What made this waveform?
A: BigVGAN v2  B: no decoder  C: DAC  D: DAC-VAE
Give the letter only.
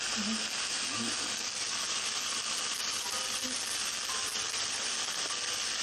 B